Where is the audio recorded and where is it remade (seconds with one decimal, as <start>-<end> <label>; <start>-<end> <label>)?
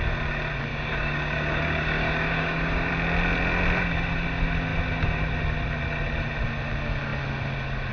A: 0.0-0.7 recorded; 0.7-2.9 remade; 2.9-7.9 recorded